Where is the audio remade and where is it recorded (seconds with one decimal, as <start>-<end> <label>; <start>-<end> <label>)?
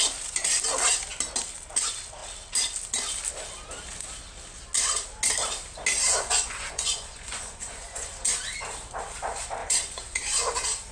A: 0.0-6.1 recorded; 6.1-8.1 remade; 8.1-9.6 recorded; 9.6-10.4 remade; 10.4-10.9 recorded